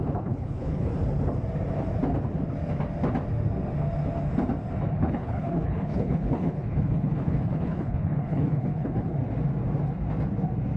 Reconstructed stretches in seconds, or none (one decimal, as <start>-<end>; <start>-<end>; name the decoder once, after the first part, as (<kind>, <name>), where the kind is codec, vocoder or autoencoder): 0.0-0.9 (codec, HILCodec); 4.9-9.2